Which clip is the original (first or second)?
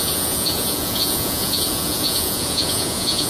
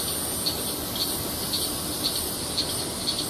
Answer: second